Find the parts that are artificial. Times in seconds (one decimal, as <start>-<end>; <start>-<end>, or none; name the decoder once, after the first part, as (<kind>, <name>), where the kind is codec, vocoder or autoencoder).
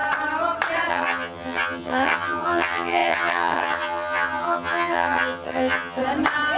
0.9-6.0 (vocoder, HiFi-GAN)